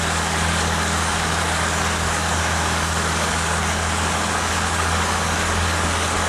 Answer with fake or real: fake